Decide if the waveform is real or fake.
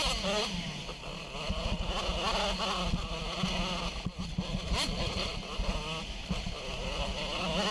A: real